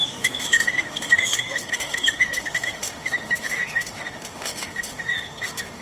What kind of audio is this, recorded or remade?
remade